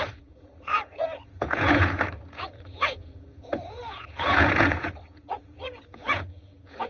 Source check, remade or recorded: remade